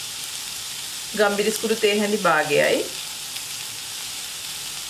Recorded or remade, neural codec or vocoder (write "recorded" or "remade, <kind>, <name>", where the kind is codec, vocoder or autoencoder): recorded